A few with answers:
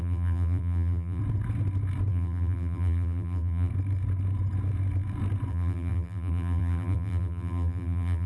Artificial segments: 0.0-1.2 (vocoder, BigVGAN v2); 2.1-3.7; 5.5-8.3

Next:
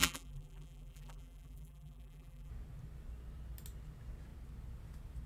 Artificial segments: 0.0-2.5 (vocoder, BigVGAN v2)

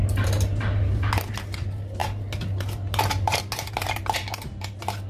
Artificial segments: none

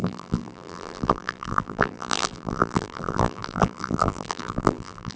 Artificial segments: 0.0-5.2 (vocoder, BigVGAN v2)